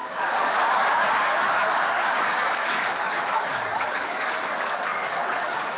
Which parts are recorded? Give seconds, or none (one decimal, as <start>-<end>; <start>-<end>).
none

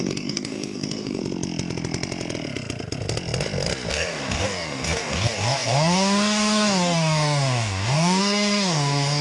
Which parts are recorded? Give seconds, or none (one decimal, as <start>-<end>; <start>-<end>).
1.2-3.9

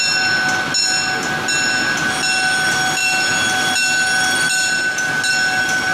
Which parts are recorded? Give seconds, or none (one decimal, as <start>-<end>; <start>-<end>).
0.0-5.9